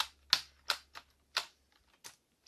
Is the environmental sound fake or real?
real